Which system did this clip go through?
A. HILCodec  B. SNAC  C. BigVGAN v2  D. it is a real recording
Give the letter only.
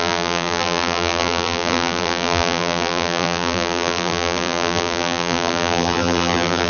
C